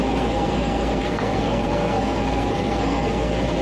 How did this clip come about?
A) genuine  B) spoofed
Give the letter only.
B